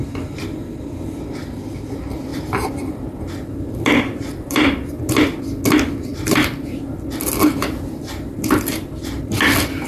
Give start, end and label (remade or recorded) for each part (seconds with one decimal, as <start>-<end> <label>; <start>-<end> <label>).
0.0-2.3 recorded; 2.3-3.3 remade; 3.3-3.9 recorded; 3.9-4.9 remade; 4.9-6.1 recorded; 6.1-6.9 remade; 6.9-9.9 recorded